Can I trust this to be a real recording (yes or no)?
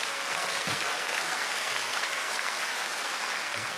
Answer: no